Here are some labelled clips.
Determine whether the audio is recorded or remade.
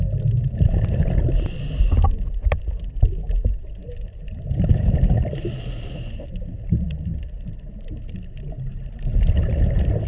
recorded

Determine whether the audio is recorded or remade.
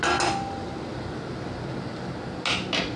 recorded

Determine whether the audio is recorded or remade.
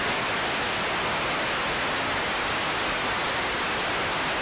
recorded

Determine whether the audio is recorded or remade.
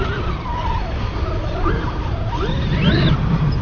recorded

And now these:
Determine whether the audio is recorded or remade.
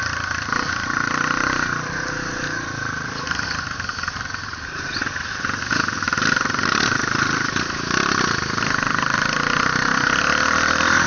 recorded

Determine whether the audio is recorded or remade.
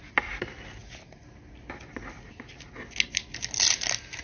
recorded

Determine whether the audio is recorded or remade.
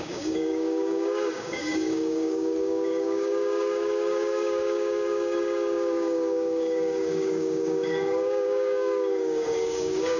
remade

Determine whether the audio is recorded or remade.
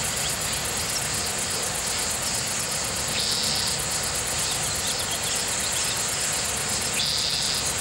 recorded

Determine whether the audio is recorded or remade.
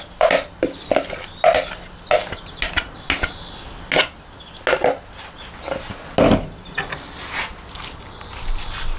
recorded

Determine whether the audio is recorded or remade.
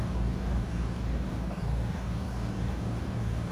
remade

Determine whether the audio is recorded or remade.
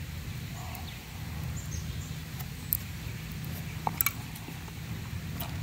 recorded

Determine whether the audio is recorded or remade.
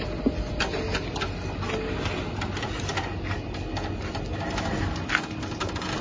recorded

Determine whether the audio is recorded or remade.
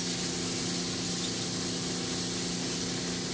recorded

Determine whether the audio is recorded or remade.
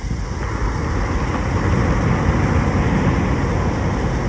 recorded